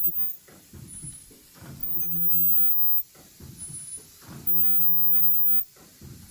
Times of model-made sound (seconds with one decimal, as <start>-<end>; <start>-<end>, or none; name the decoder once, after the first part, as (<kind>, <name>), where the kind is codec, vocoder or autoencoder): none